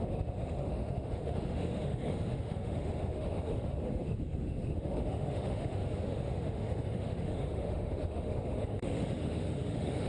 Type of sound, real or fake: fake